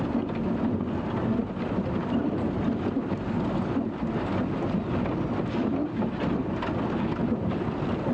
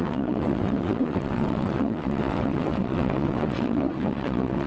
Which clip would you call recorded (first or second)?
first